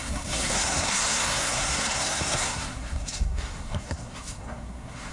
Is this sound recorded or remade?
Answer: remade